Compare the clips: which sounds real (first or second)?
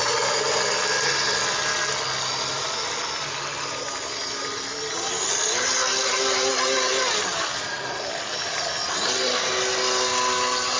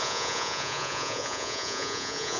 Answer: first